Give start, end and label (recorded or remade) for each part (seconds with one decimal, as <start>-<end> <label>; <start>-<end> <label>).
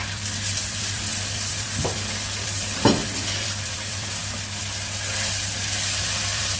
0.0-4.2 remade; 4.2-6.0 recorded; 6.0-6.6 remade